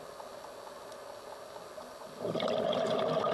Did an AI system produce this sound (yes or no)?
no